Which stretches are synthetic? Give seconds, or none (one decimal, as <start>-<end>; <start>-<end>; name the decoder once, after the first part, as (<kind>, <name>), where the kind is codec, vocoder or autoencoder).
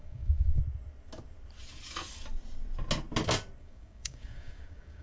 0.0-0.6 (codec, DAC); 3.6-5.0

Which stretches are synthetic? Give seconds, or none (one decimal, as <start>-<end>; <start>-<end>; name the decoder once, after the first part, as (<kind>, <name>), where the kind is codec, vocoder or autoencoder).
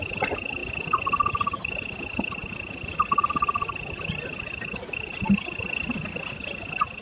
none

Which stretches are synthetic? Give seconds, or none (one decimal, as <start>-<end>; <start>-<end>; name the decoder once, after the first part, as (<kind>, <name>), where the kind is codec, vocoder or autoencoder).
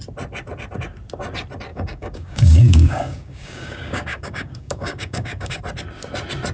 1.7-5.6 (codec, DAC)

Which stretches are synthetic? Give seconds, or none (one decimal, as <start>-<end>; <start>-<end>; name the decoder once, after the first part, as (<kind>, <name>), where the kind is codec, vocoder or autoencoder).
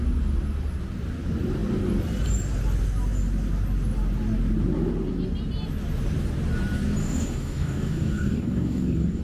7.0-9.2 (codec, DAC)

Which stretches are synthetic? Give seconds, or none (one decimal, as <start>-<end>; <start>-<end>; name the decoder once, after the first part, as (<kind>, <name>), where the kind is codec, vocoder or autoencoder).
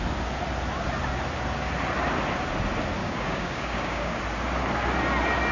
3.0-4.2 (codec, DAC)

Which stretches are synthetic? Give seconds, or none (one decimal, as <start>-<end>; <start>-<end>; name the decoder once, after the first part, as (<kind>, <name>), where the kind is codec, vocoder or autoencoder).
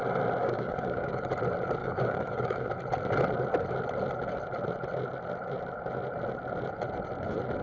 0.4-1.3 (codec, DAC); 1.8-2.7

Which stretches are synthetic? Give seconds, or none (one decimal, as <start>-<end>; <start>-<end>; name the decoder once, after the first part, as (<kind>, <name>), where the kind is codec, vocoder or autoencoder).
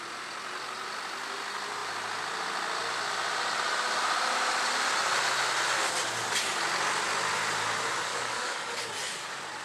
8.1-8.9 (codec, DAC)